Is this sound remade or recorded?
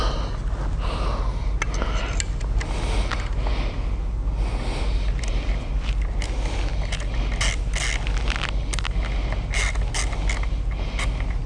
recorded